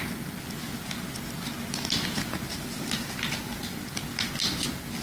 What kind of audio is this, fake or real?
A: real